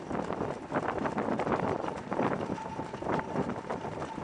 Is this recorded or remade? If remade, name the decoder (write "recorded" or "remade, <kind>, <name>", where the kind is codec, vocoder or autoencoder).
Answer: remade, vocoder, BigVGAN v2